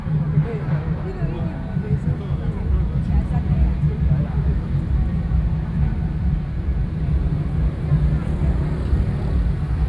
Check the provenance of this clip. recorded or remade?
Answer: recorded